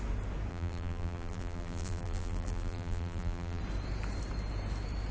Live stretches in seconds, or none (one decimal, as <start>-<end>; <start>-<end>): 0.0-0.5; 3.6-5.1